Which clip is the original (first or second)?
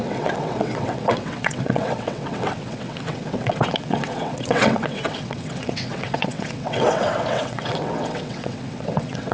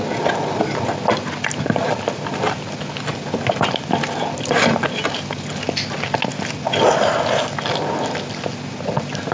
second